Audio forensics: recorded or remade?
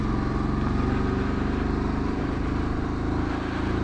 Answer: recorded